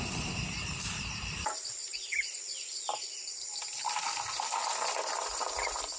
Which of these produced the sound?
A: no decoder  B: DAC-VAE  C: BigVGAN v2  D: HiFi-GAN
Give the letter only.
C